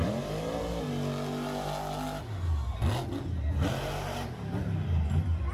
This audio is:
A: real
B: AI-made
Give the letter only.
A